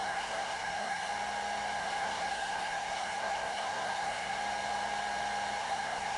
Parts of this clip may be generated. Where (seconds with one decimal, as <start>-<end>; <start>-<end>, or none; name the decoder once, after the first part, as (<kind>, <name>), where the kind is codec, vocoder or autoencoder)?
0.0-1.1 (codec, SNAC); 1.8-4.4; 5.6-6.2